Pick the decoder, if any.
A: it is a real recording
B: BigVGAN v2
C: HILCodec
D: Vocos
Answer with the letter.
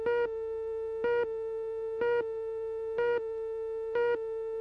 A